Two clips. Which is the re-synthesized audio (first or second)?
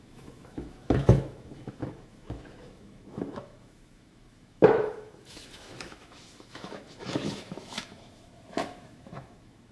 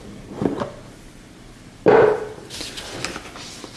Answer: first